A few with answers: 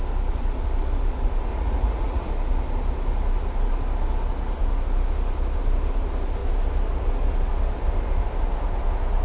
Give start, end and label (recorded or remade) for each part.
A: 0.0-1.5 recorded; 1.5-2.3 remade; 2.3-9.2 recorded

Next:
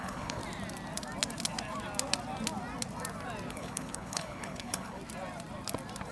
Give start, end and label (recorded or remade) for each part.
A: 0.0-0.4 remade; 0.4-3.5 recorded; 3.5-5.0 remade; 5.0-6.1 recorded

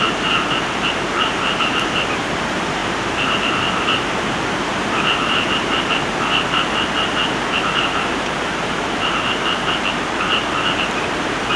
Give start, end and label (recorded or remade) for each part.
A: 0.0-11.6 remade